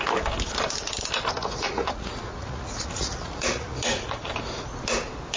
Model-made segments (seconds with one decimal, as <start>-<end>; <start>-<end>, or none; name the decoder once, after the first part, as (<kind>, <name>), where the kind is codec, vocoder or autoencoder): 1.4-4.3 (vocoder, Vocos)